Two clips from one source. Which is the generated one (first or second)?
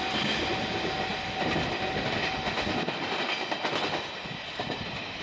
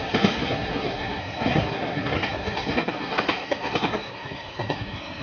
second